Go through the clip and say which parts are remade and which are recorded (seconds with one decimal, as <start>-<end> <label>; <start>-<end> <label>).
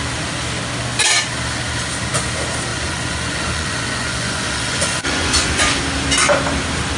0.0-2.7 recorded; 2.7-5.8 remade; 5.8-7.0 recorded